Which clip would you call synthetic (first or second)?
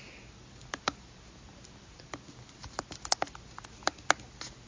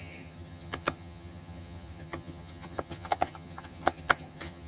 second